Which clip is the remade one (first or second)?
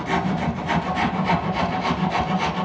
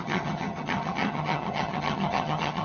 second